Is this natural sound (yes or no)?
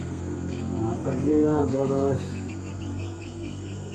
no